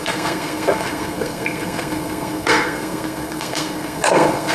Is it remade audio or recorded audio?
remade